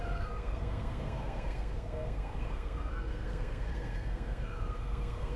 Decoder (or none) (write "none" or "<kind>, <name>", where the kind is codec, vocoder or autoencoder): codec, SNAC